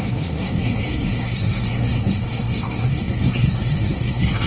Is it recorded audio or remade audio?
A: remade